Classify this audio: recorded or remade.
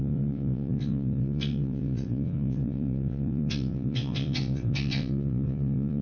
remade